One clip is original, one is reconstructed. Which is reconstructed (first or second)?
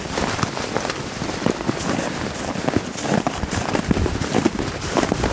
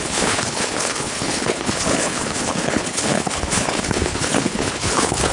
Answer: second